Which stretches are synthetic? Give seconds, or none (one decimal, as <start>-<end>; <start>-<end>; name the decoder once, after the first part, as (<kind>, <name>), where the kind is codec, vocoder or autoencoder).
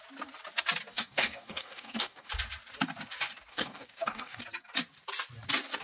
0.9-2.3 (codec, DAC); 3.5-4.4